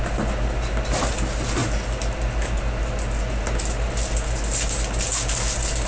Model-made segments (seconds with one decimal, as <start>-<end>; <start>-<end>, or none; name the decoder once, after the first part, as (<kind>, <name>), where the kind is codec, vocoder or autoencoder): none